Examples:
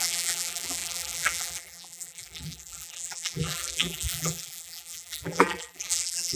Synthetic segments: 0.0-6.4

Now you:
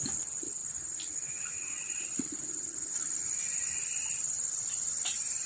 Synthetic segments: 0.6-1.3; 3.8-5.5

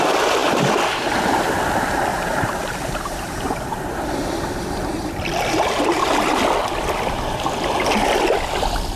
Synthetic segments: 2.1-4.0

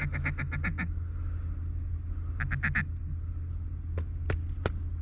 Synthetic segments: none

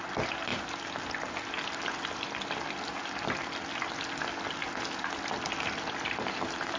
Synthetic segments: none

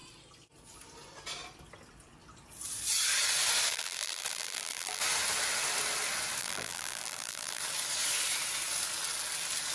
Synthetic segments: 3.7-5.0; 6.4-7.6

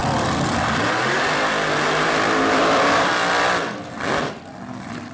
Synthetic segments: 0.0-3.1